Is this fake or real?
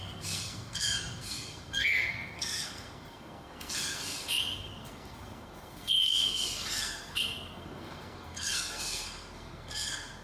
fake